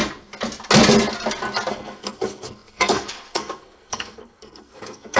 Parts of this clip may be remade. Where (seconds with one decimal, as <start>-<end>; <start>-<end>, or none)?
1.7-5.2